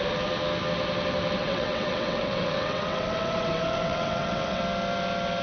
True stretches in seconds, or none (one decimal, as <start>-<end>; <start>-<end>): 0.0-1.4; 4.6-5.4